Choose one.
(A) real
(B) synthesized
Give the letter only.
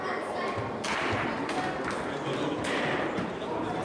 A